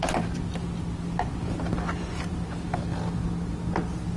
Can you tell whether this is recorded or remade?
recorded